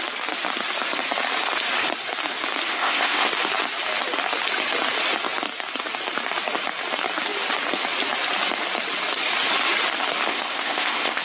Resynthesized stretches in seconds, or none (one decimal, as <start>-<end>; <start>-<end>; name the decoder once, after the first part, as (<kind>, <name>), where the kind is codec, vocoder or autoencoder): 2.7-3.3 (codec, ZipCodec); 10.3-11.2

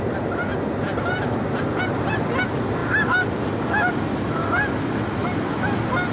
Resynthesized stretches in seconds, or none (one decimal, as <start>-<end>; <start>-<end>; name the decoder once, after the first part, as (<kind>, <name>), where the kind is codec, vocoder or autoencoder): none

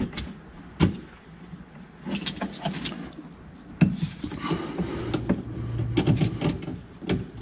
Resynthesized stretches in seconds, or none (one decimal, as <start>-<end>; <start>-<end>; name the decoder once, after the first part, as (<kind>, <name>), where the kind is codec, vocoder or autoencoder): none

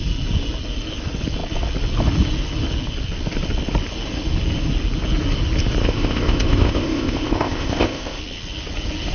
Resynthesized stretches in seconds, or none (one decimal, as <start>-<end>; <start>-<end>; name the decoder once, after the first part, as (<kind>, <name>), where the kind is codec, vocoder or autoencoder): 5.8-8.2 (codec, ZipCodec)

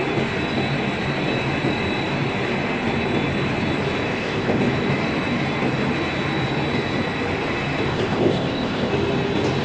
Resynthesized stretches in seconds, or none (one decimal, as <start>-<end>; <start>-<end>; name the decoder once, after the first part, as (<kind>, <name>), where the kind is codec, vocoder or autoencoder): 4.1-4.6 (codec, ZipCodec); 7.9-8.9

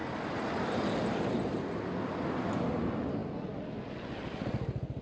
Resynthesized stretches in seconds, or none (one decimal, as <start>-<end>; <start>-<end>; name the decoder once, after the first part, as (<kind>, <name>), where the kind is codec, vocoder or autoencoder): none